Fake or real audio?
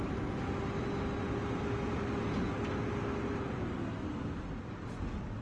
real